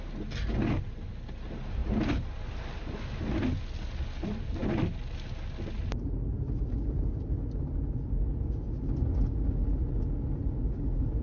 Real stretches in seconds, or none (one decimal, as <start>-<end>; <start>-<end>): 0.0-1.8; 2.8-11.2